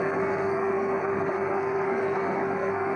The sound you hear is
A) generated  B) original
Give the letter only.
A